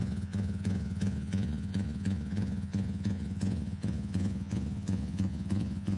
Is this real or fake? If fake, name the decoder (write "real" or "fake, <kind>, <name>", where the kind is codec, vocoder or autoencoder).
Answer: fake, vocoder, Vocos